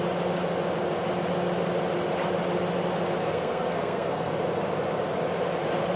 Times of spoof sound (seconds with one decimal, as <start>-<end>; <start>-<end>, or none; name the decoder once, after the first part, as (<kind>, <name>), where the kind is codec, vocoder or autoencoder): 3.2-4.3 (codec, SNAC)